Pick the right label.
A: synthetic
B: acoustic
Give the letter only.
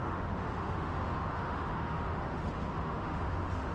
A